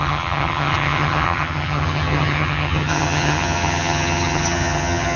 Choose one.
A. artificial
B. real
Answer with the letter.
A